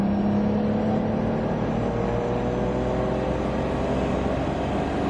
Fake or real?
real